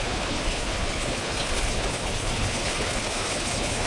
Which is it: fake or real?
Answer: fake